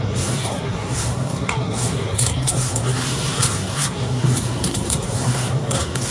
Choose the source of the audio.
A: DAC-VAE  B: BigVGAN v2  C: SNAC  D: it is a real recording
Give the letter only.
C